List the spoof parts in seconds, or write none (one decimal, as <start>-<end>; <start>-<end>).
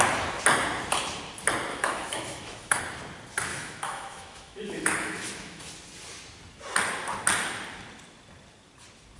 1.7-2.8; 3.5-5.6